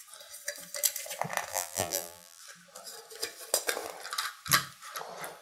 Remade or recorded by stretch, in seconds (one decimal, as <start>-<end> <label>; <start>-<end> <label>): 0.0-1.5 recorded; 1.5-2.4 remade; 2.4-5.4 recorded